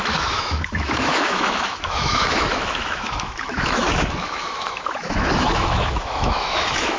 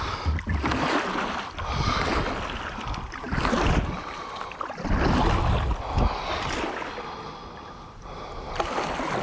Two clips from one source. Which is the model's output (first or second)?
first